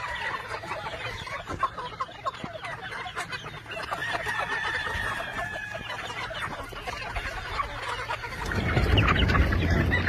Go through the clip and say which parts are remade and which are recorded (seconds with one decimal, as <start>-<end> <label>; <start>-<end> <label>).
0.0-10.1 recorded